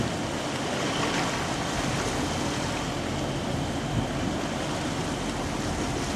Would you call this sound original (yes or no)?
yes